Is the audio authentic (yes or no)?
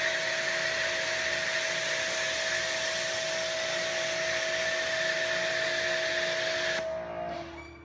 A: yes